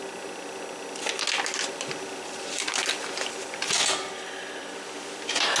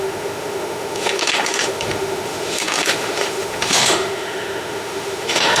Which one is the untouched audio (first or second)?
first